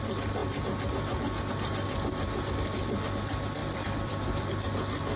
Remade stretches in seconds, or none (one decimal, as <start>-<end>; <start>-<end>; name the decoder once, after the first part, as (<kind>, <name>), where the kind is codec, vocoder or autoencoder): 0.4-1.5 (vocoder, BigVGAN v2); 3.6-4.5